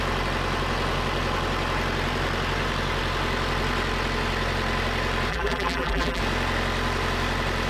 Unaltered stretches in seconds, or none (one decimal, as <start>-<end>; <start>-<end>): 0.0-5.3; 6.2-7.7